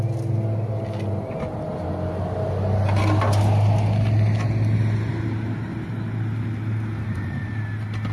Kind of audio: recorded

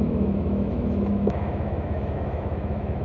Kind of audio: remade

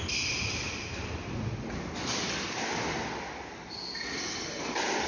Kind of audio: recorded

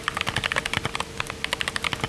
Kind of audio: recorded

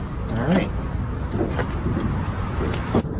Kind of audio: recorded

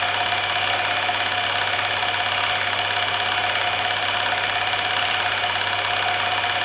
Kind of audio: recorded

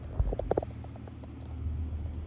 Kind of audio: recorded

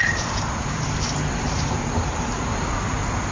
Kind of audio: remade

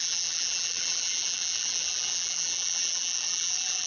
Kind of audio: remade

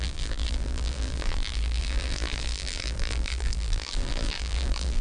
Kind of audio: remade